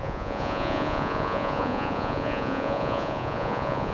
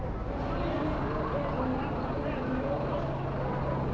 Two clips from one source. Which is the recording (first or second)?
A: second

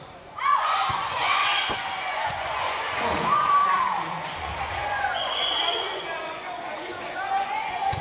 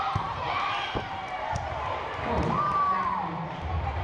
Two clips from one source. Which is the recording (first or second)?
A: second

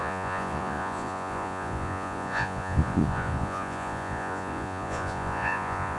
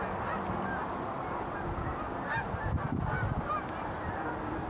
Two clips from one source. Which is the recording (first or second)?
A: second